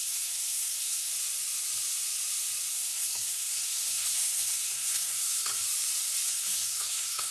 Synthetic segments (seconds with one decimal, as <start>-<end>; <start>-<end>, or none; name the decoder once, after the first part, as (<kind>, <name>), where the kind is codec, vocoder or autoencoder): 0.0-1.1 (codec, SNAC); 2.7-5.5; 6.3-7.3